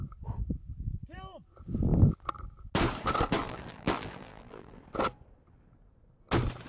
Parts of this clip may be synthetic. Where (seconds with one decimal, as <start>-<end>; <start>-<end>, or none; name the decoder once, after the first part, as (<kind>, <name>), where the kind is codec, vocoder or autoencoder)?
3.4-4.8 (vocoder, BigVGAN v2)